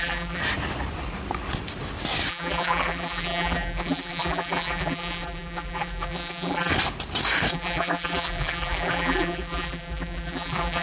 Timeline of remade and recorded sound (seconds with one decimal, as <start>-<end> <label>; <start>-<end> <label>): 0.0-0.4 remade; 0.4-2.3 recorded; 2.3-6.7 remade; 6.7-7.5 recorded; 7.5-10.8 remade